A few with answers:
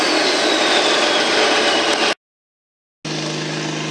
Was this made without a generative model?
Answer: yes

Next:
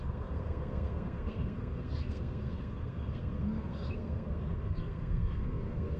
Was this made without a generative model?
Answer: no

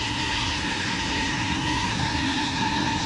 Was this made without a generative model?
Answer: no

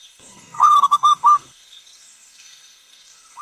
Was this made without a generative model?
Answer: no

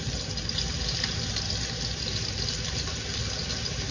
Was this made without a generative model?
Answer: yes